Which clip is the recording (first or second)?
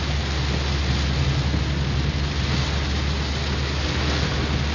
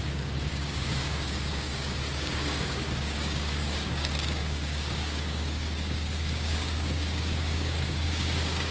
first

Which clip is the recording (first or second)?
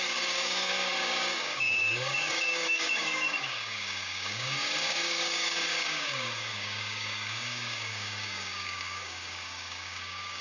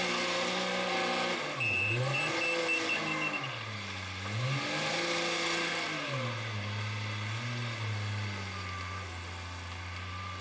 second